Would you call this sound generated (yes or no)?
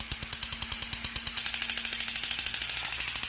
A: no